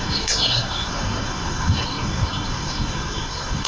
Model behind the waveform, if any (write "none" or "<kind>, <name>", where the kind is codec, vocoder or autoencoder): codec, SNAC